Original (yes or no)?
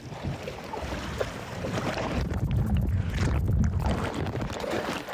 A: yes